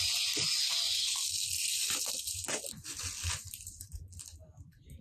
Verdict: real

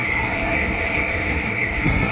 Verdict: fake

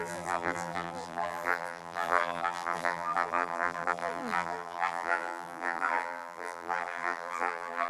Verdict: fake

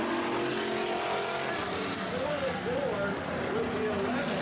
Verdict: real